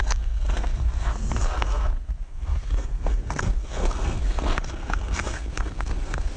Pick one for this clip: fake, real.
fake